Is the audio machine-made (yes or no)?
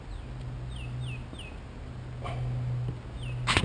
no